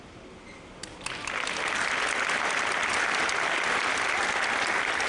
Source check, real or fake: real